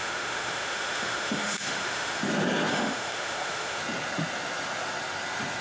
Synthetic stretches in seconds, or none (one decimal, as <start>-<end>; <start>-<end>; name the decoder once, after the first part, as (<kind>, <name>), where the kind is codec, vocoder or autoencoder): 0.0-2.2 (autoencoder, DAC-VAE); 2.7-3.8